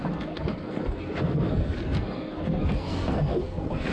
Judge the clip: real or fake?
fake